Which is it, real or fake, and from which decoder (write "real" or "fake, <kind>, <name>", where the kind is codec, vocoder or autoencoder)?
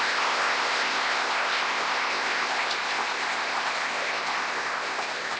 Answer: fake, codec, ZipCodec